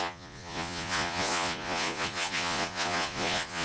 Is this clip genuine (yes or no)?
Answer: no